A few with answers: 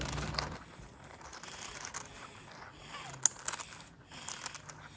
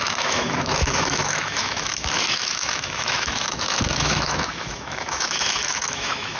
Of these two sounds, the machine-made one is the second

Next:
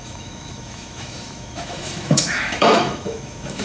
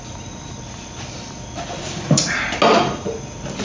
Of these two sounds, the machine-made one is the first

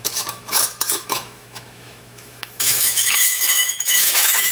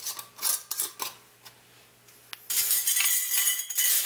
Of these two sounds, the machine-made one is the first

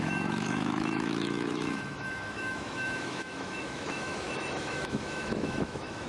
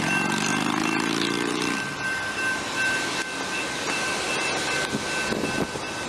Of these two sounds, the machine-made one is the first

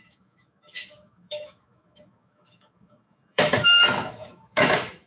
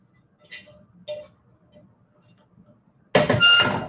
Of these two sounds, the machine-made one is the first